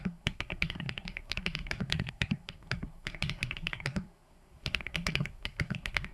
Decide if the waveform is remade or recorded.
remade